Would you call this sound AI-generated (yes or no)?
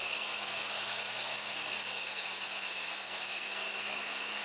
yes